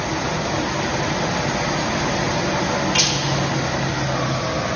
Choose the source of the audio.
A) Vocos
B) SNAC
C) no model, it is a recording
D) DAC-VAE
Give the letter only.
C